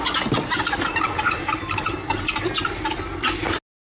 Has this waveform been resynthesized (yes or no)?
no